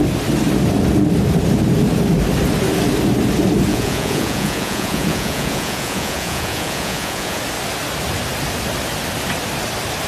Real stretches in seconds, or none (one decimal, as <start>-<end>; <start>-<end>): 0.0-3.7; 7.4-10.1